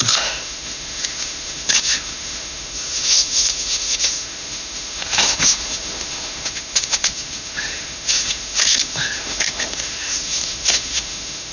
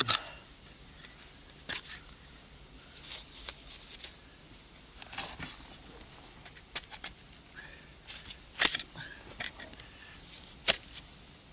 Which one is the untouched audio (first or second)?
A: second